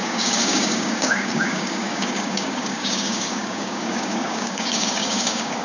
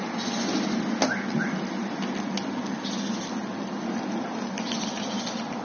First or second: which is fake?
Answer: first